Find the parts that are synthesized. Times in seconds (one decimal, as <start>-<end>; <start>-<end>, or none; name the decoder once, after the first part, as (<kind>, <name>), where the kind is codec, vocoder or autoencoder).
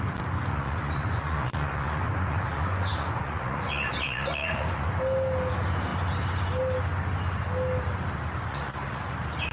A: 0.5-4.9 (vocoder, Vocos); 8.5-9.0